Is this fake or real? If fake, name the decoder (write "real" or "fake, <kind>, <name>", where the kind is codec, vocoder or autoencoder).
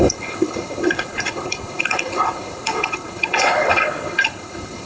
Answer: fake, codec, HILCodec